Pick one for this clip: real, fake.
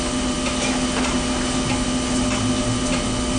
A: real